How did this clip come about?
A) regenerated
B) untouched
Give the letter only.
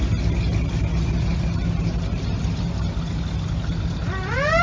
B